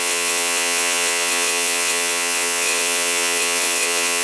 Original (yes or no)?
no